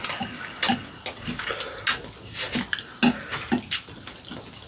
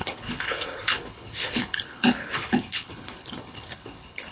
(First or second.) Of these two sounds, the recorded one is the first